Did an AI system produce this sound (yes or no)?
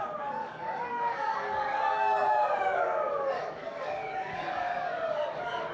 yes